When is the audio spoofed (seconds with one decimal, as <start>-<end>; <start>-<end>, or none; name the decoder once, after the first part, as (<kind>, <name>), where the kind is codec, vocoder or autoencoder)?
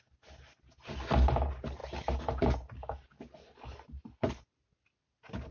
none